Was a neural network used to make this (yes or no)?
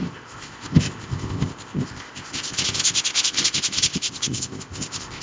yes